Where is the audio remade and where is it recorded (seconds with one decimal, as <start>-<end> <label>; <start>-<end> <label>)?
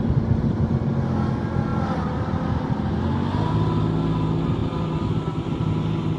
0.0-6.2 recorded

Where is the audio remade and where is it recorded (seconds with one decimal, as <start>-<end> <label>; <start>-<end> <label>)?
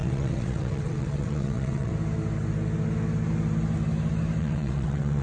0.0-1.9 remade; 1.9-4.4 recorded; 4.4-5.2 remade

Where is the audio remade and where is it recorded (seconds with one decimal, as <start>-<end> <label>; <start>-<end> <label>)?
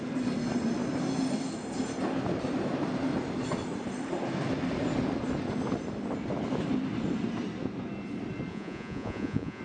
0.0-8.5 recorded; 8.5-9.6 remade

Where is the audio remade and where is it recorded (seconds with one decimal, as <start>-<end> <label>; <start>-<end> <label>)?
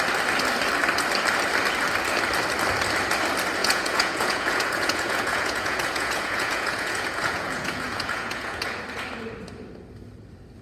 0.0-3.6 recorded; 3.6-8.8 remade; 8.8-10.6 recorded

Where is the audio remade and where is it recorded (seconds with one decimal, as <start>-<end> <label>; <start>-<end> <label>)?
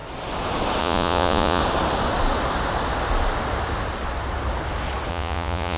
0.0-0.8 recorded; 0.8-1.6 remade; 1.6-5.1 recorded; 5.1-5.8 remade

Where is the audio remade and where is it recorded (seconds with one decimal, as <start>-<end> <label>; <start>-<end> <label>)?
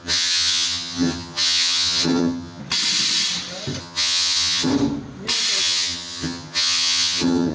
0.0-2.6 remade; 2.6-3.8 recorded; 3.8-4.7 remade; 4.7-5.6 recorded; 5.6-7.5 remade